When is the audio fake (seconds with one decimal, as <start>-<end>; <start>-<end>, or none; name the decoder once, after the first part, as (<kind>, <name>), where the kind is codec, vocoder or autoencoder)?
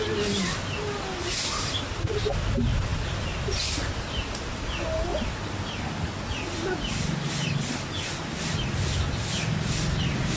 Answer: none